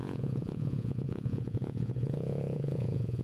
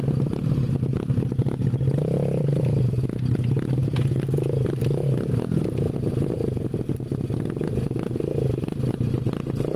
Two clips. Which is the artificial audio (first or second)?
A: first